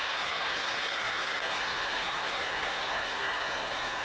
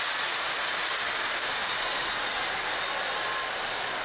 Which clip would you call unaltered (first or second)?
second